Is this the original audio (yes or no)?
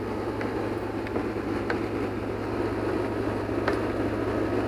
yes